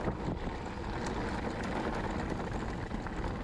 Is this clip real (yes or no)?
yes